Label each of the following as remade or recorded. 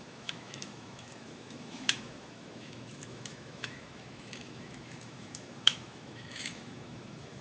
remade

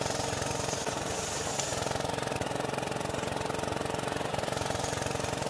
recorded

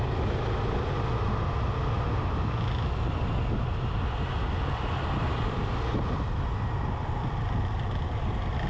recorded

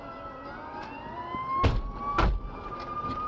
recorded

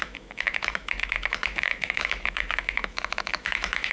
remade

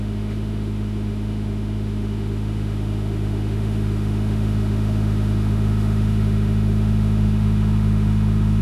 remade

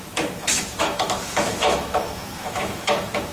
remade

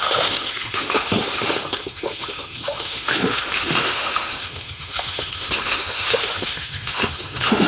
remade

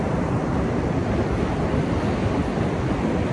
recorded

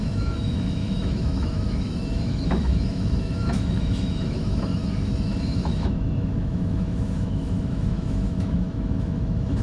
remade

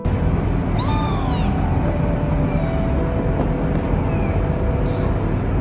recorded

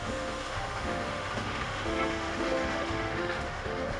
remade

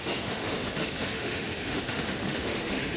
remade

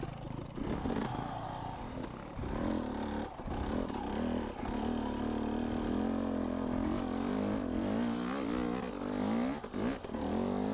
recorded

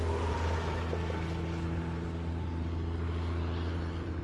recorded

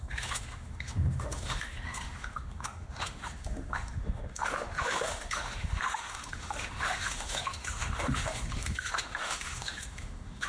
remade